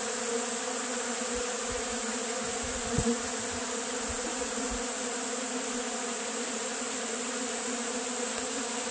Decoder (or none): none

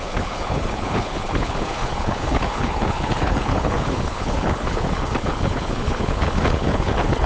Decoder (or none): codec, HILCodec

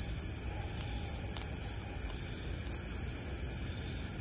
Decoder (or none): none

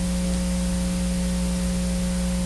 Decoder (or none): none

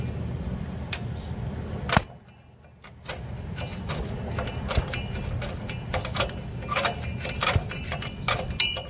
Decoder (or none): none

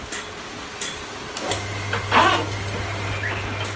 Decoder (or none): none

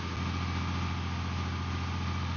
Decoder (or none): none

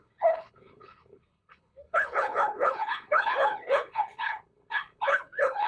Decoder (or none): codec, HILCodec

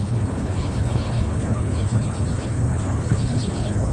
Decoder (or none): codec, HILCodec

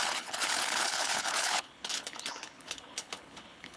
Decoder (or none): codec, HILCodec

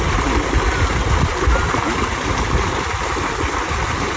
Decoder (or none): none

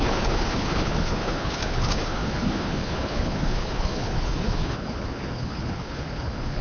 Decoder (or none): codec, HILCodec